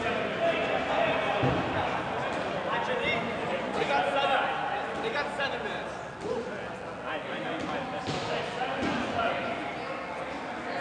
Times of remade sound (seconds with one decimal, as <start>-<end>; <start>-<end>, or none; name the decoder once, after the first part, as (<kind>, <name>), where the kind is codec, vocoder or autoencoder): 3.2-3.9 (vocoder, Vocos); 8.9-9.7